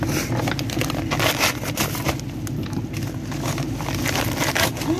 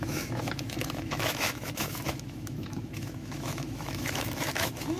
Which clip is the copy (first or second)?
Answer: second